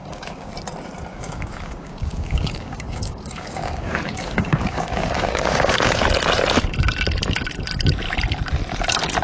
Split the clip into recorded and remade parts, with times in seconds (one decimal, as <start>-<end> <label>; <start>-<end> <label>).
0.0-0.5 remade; 0.5-1.1 recorded; 1.1-6.0 remade; 6.0-9.2 recorded